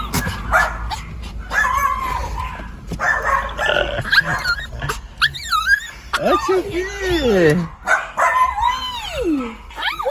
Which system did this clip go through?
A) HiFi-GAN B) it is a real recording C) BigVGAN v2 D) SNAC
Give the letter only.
B